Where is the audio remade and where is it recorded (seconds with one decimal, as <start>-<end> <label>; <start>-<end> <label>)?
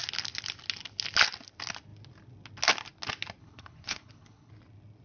0.0-3.4 recorded; 3.4-4.5 remade; 4.5-5.0 recorded